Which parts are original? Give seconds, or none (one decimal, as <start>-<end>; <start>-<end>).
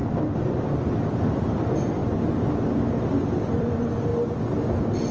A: 0.0-1.1; 2.0-3.3; 4.1-5.1